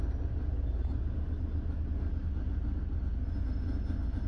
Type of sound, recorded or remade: recorded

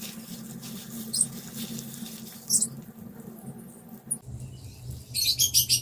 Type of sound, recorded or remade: recorded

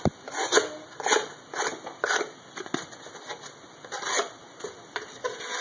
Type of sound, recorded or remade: recorded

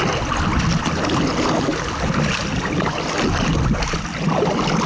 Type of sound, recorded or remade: recorded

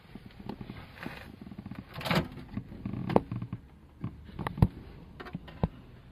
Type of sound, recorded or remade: recorded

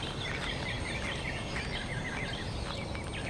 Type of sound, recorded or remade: recorded